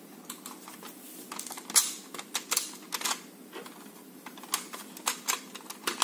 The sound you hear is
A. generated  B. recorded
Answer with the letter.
B